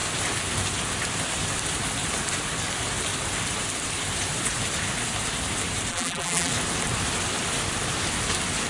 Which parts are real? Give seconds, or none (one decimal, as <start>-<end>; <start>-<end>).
0.0-5.9; 6.5-8.7